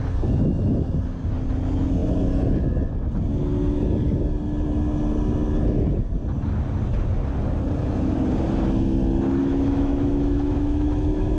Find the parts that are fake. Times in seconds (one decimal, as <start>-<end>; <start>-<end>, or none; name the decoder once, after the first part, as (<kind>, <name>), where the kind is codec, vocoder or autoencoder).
9.4-11.4 (autoencoder, DAC-VAE)